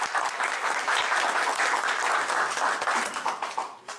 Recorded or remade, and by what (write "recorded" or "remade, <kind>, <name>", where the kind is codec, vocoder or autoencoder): recorded